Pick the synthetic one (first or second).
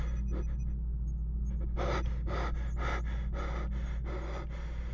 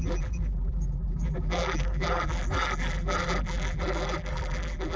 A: second